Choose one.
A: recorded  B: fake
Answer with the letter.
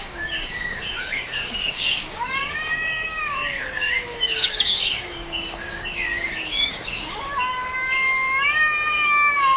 B